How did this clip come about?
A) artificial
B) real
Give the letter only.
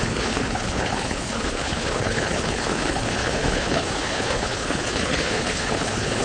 A